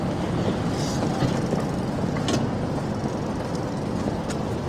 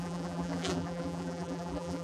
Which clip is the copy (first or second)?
second